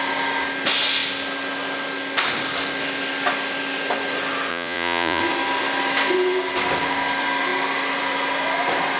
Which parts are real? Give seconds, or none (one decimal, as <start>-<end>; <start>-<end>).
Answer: 0.0-4.5; 5.2-9.0